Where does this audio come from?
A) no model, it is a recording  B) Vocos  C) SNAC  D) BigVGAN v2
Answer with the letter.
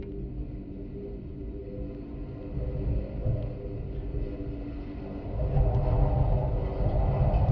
A